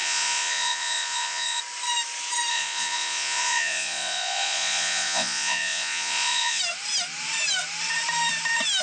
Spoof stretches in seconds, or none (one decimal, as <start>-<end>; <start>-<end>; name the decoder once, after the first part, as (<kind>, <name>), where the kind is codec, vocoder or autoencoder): 0.0-1.6 (vocoder, Vocos); 2.5-6.6